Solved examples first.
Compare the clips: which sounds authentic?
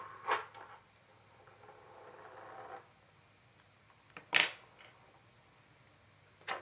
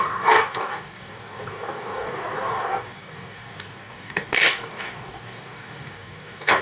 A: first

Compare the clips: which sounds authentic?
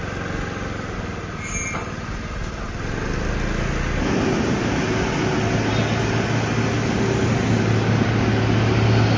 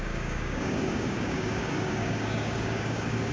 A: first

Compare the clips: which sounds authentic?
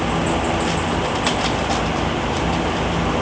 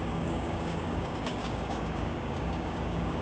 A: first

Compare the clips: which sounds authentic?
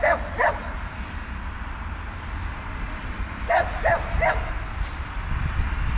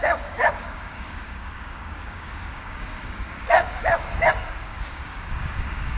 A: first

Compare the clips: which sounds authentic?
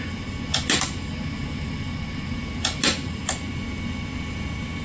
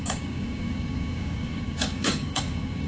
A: first